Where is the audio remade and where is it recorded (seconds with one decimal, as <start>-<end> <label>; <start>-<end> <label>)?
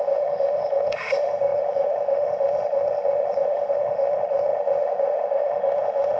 0.0-6.2 remade